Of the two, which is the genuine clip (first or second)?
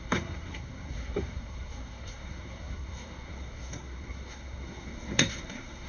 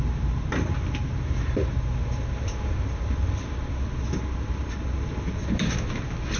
second